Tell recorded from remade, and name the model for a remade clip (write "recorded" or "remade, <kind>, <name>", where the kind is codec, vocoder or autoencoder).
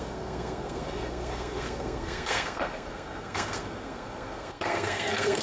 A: remade, codec, SNAC